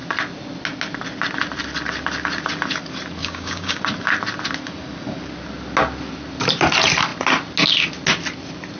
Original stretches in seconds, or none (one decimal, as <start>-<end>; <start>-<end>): 0.0-3.2; 3.8-8.8